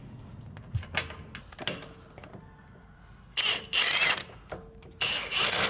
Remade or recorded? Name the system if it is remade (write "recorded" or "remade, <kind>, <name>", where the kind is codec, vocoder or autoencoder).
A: recorded